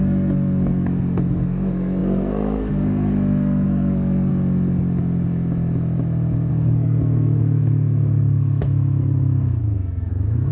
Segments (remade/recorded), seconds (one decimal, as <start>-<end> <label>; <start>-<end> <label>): 0.0-4.3 remade; 4.3-6.5 recorded; 6.5-10.5 remade